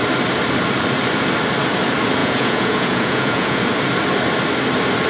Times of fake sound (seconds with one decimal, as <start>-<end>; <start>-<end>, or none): 2.2-3.6